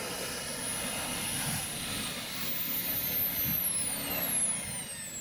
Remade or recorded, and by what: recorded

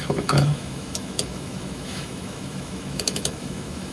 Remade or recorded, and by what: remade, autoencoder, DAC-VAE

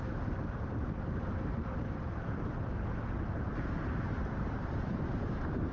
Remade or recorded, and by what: remade, vocoder, BigVGAN v2